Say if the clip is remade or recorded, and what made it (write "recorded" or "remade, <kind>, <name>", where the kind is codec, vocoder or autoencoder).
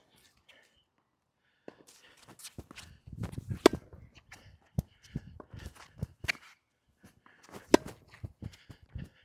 recorded